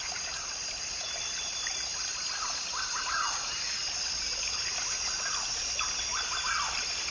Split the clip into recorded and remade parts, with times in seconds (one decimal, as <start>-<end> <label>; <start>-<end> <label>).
0.0-7.1 recorded